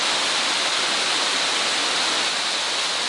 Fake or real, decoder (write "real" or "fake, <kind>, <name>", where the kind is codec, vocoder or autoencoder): real